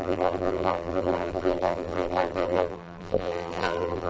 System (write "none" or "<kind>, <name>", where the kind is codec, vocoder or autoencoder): vocoder, BigVGAN v2